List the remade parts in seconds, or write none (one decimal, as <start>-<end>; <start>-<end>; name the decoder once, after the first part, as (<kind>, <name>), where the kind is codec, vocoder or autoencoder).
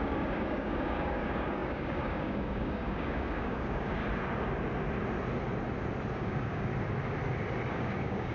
0.0-4.0 (codec, DAC); 6.1-6.7; 7.7-8.3